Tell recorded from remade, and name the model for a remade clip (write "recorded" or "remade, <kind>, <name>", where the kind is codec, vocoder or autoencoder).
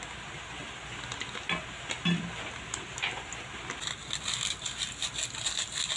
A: recorded